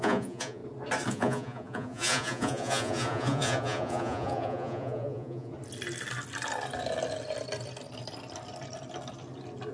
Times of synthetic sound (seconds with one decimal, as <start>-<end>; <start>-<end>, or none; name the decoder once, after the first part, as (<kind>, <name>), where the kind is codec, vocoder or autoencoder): 0.0-0.6 (vocoder, Vocos); 1.1-5.5